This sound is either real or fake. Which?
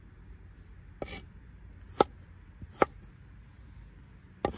real